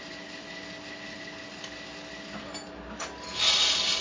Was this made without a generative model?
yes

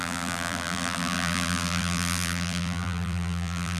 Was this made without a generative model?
no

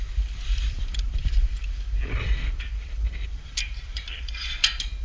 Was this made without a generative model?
no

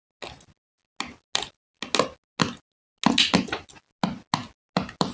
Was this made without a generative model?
yes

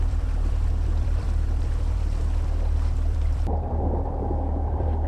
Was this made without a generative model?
no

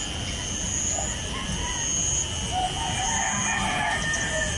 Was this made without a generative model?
yes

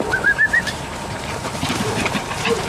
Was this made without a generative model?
no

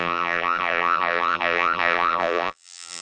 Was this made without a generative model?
no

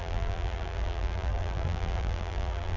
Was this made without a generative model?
no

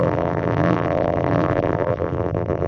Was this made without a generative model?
no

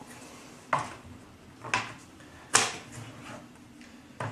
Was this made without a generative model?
yes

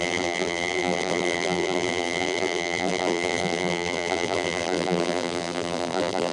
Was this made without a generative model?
no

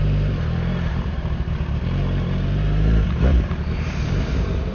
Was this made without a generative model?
no